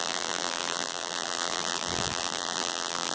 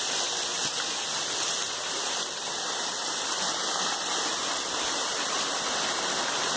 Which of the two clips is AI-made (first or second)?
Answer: first